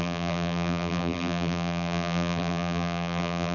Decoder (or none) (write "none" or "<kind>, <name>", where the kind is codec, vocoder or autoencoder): vocoder, BigVGAN v2